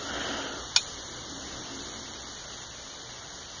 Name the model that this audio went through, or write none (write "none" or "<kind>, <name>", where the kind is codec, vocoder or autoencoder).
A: none